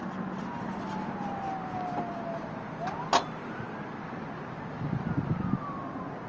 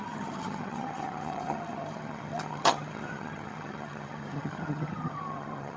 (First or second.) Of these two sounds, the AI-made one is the second